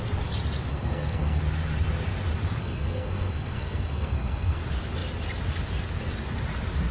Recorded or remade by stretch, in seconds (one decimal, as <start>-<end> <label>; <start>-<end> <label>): 0.0-0.7 recorded; 0.7-1.4 remade; 1.4-2.6 recorded; 2.6-4.6 remade; 4.6-6.9 recorded